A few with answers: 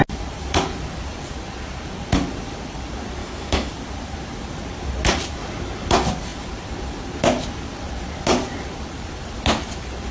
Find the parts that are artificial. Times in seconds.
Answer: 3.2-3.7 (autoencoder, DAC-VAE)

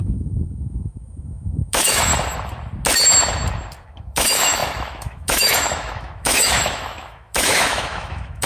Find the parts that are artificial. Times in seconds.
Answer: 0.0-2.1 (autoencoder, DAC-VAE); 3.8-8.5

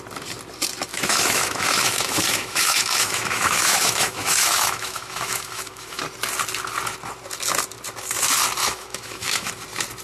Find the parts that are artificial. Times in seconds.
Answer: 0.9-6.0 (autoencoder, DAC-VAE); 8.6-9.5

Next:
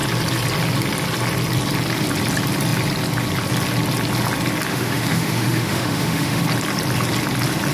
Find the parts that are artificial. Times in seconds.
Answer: 4.7-6.4 (autoencoder, DAC-VAE)

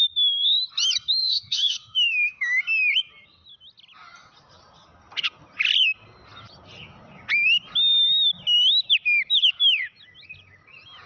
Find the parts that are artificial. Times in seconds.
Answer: 1.2-2.6 (autoencoder, DAC-VAE)